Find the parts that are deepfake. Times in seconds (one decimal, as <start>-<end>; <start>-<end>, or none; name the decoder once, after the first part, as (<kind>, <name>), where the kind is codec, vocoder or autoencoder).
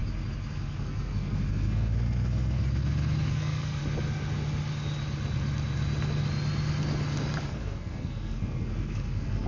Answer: 0.5-2.6 (codec, SNAC); 3.3-3.8; 7.5-9.5